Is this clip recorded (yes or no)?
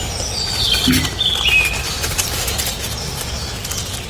yes